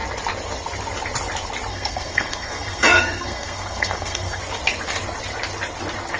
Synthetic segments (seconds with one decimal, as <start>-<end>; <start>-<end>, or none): 1.7-4.4